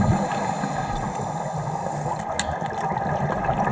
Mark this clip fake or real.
real